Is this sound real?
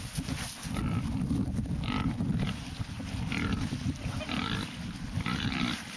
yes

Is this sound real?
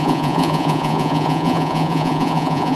no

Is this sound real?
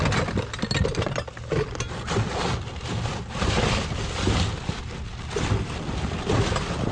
yes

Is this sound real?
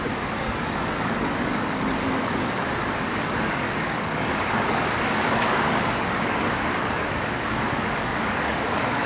no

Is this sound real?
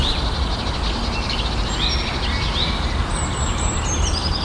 yes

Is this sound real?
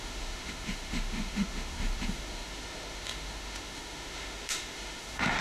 no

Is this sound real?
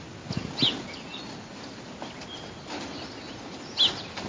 yes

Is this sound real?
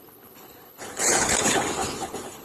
no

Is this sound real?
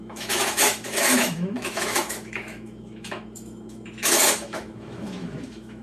no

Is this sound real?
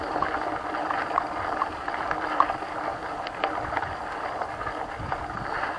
yes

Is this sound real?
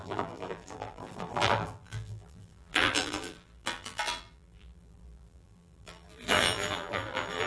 no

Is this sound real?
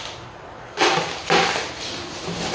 yes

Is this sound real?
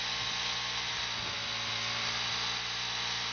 yes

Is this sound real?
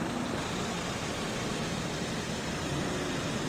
yes